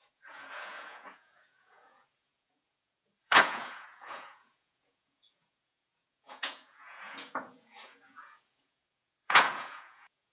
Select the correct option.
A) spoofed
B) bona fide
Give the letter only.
A